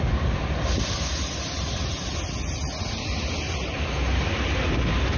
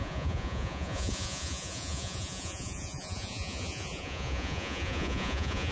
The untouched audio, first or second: first